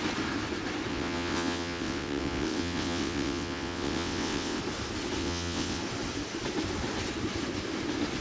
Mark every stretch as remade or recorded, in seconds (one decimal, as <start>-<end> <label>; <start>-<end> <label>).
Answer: 0.0-0.9 recorded; 0.9-4.6 remade; 4.6-5.2 recorded; 5.2-5.8 remade; 5.8-8.2 recorded